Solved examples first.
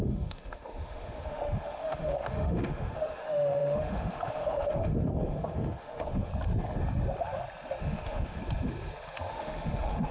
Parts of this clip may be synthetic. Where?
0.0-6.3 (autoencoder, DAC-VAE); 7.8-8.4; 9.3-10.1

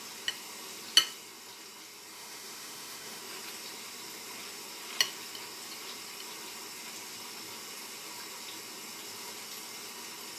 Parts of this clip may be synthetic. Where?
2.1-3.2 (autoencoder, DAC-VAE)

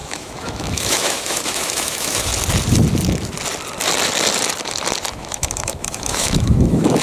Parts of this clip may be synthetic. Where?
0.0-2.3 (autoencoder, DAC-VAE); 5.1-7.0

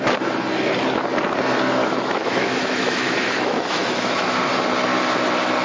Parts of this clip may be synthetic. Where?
1.8-4.5 (autoencoder, DAC-VAE)